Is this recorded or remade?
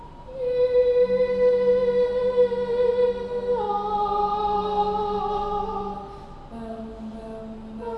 recorded